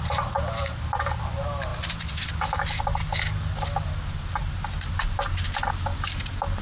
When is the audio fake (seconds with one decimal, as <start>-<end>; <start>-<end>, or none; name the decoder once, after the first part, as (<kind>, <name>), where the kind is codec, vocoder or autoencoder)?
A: 0.0-1.7 (vocoder, BigVGAN v2); 5.7-6.6